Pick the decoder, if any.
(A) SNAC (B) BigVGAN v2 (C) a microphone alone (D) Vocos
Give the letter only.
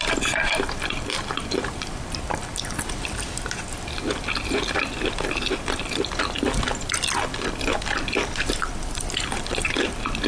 B